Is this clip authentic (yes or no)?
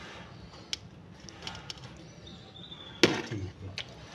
yes